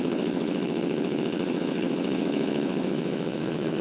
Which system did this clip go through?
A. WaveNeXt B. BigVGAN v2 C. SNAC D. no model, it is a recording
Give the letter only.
A